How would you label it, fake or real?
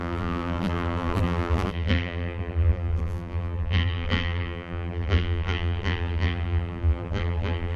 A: fake